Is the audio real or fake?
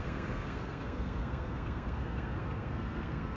fake